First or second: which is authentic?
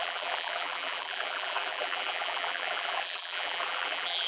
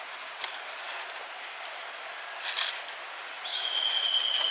second